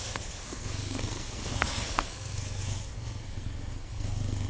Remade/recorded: remade